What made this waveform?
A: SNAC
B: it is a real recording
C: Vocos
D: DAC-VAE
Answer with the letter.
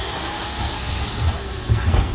A